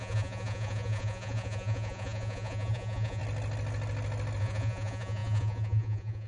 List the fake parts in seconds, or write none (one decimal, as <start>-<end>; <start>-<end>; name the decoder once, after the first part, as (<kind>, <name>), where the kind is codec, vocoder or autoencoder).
0.0-3.2 (vocoder, Vocos); 4.4-6.3